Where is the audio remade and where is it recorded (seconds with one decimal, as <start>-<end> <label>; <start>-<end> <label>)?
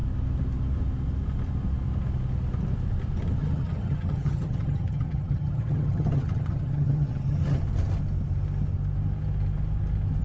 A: 0.0-3.4 recorded; 3.4-7.6 remade; 7.6-10.2 recorded